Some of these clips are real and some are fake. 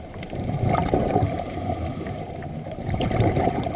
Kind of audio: fake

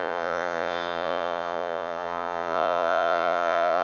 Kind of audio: fake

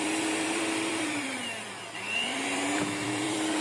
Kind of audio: fake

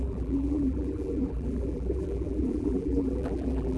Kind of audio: fake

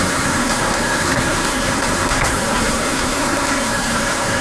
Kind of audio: fake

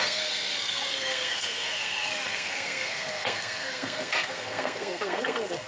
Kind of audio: fake